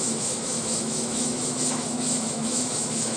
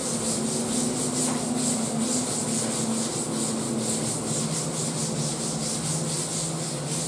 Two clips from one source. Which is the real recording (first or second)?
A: second